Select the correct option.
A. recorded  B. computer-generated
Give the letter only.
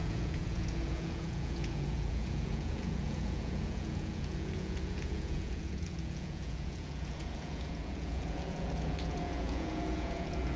B